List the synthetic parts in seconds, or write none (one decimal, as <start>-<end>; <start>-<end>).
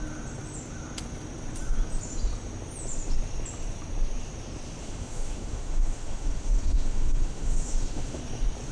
4.8-8.2